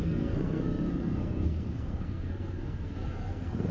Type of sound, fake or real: fake